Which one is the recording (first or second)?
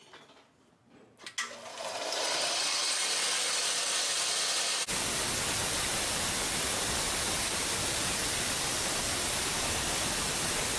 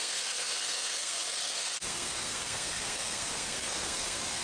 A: first